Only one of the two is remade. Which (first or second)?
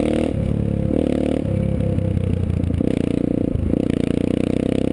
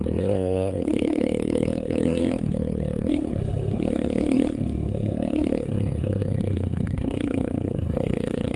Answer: second